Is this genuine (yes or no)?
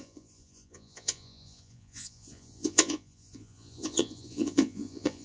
no